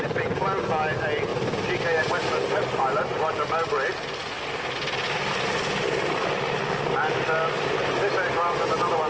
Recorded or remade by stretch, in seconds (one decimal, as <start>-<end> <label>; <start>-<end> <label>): 0.0-9.1 recorded